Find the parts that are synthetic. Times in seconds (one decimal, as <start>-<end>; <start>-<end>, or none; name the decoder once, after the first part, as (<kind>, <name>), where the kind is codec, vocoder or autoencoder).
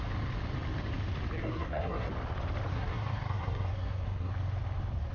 1.4-2.1 (codec, SNAC); 2.7-4.3